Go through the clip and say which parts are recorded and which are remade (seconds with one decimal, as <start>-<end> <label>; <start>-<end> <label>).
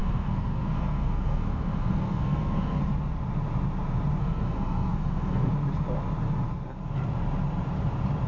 0.0-2.8 remade; 2.8-4.2 recorded; 4.2-5.5 remade; 5.5-8.3 recorded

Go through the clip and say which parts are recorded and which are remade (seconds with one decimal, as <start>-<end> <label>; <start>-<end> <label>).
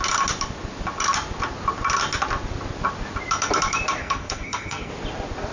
0.0-4.0 recorded; 4.0-4.9 remade; 4.9-5.5 recorded